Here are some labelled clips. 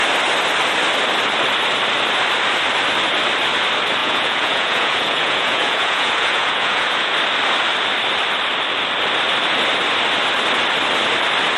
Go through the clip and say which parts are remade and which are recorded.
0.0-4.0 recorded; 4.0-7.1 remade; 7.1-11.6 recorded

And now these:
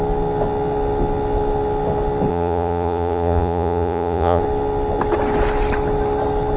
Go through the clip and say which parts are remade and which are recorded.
0.0-2.3 recorded; 2.3-4.4 remade; 4.4-6.6 recorded

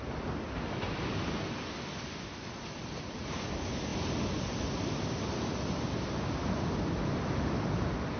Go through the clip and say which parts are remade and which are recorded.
0.0-8.2 recorded

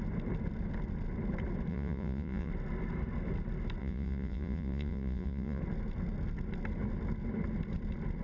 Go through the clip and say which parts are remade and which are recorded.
0.0-1.7 recorded; 1.7-2.5 remade; 2.5-3.8 recorded; 3.8-5.6 remade; 5.6-8.2 recorded

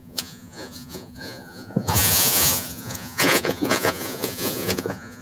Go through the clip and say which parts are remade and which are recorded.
0.0-5.2 remade